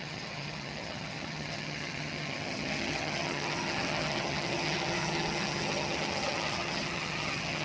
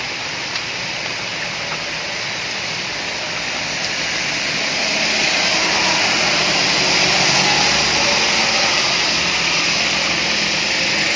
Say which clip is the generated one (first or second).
first